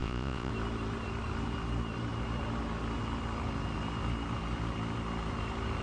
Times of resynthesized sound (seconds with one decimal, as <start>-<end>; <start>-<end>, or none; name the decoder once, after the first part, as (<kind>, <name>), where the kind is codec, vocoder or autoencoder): 0.0-0.5 (vocoder, Vocos)